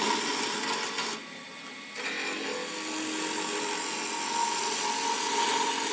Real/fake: real